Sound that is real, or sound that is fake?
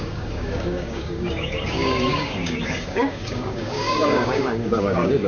fake